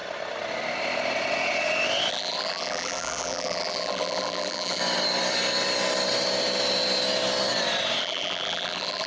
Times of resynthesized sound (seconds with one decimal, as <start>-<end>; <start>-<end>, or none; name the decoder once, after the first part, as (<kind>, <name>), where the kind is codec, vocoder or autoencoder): 2.1-4.8 (vocoder, BigVGAN v2); 8.0-9.1